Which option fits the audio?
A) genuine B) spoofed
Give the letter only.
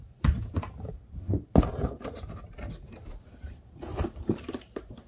B